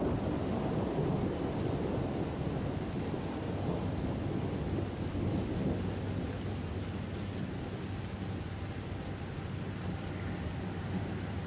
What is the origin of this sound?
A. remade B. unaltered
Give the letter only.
B